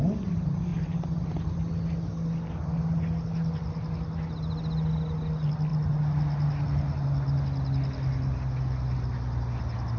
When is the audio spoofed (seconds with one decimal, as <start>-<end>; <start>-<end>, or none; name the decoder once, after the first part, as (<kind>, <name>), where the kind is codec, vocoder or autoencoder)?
none